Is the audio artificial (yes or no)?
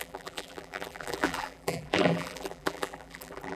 yes